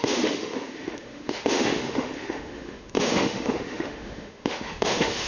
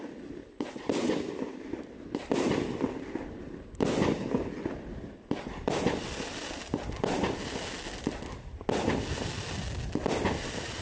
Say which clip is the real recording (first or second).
second